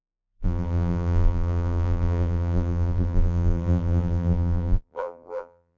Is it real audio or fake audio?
fake